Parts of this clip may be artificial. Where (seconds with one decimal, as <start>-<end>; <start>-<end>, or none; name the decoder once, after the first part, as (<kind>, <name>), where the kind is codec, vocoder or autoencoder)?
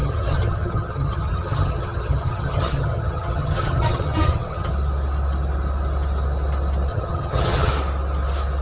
0.0-4.7 (vocoder, HiFi-GAN); 6.9-7.7